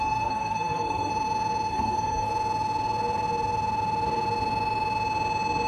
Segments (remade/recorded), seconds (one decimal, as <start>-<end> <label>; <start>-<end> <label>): 0.0-1.1 remade; 1.1-1.7 recorded; 1.7-2.3 remade; 2.3-5.7 recorded